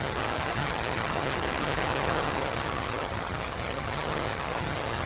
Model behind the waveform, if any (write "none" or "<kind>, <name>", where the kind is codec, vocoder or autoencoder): vocoder, HiFi-GAN